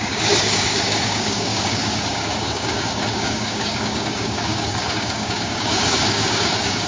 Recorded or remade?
remade